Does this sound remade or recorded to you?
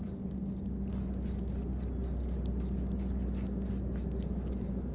recorded